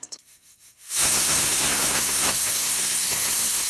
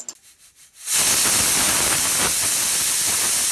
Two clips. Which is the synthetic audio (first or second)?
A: first